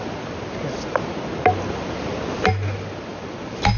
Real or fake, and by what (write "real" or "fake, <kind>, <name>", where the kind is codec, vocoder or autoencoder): real